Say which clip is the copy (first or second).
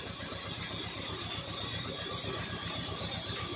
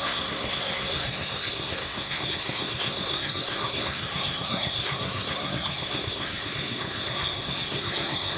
second